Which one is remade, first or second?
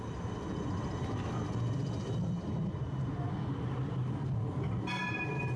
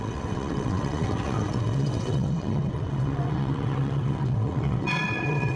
second